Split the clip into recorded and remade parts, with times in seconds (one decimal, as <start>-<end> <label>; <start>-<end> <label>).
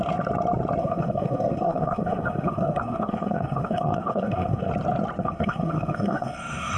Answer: 0.0-0.8 recorded; 0.8-4.7 remade; 4.7-5.2 recorded; 5.2-6.8 remade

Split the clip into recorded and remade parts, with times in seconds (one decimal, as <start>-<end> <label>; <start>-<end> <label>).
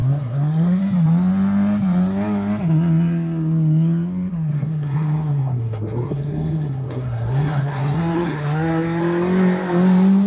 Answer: 0.0-0.8 remade; 0.8-4.3 recorded; 4.3-9.0 remade; 9.0-10.3 recorded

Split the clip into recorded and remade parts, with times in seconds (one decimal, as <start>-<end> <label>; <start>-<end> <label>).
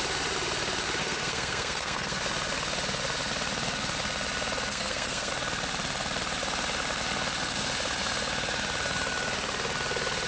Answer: 0.0-1.0 recorded; 1.0-2.2 remade; 2.2-4.7 recorded; 4.7-5.3 remade; 5.3-10.3 recorded